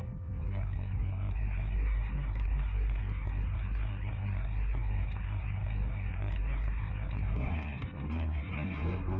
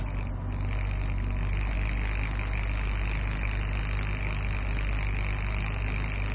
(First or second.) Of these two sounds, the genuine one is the second